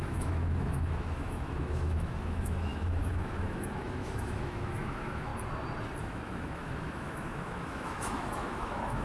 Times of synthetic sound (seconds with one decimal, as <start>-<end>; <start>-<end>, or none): 0.0-5.3; 6.0-9.0